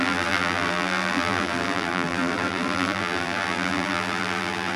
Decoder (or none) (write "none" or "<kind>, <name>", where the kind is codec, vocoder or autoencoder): vocoder, BigVGAN v2